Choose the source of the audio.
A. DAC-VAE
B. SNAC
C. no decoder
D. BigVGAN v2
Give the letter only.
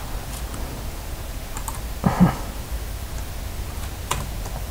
C